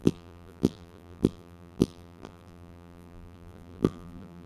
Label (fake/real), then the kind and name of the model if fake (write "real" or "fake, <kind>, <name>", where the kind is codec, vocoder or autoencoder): fake, vocoder, BigVGAN v2